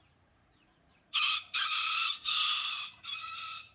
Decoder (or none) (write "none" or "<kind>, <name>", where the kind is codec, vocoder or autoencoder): vocoder, Vocos